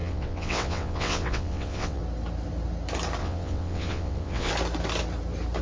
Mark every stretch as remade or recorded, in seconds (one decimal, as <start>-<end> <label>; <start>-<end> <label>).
0.0-2.0 remade; 2.0-3.2 recorded; 3.2-4.5 remade; 4.5-5.6 recorded